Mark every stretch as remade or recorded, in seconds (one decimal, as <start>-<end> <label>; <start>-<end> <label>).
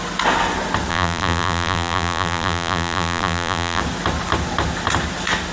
0.0-0.9 recorded; 0.9-3.8 remade; 3.8-5.5 recorded